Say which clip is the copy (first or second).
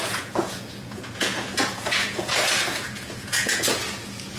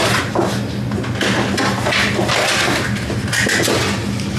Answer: first